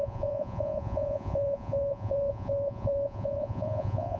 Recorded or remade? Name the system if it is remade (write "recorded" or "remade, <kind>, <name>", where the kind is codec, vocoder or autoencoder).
remade, vocoder, Vocos